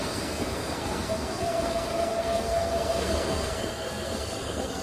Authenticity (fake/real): fake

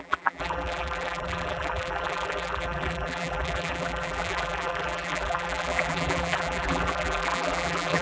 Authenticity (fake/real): fake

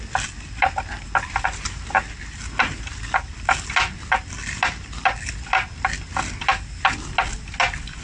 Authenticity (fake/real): real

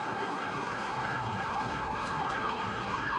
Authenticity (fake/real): fake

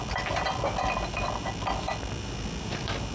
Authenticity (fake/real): real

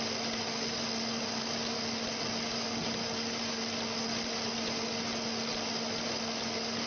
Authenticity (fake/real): real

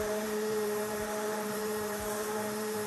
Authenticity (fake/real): fake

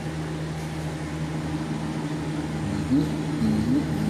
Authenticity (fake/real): real